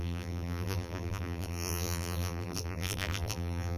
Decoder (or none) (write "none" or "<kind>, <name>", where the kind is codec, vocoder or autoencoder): vocoder, BigVGAN v2